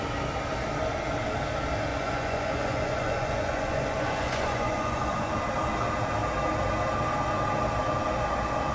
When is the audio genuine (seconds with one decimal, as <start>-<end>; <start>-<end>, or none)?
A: 0.0-1.9; 5.3-8.7